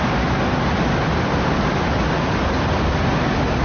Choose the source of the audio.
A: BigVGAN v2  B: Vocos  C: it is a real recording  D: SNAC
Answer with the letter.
C